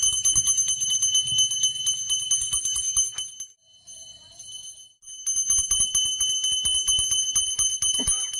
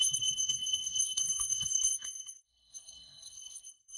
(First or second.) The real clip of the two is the first